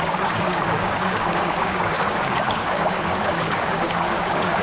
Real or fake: fake